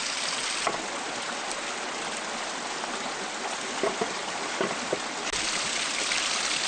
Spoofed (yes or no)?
no